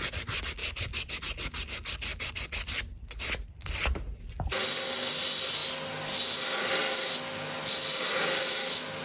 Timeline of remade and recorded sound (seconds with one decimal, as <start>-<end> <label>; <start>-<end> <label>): 0.0-0.6 recorded; 0.6-1.2 remade; 1.2-2.1 recorded; 2.1-4.2 remade; 4.2-9.0 recorded